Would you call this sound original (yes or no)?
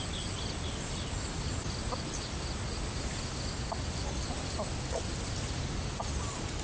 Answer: yes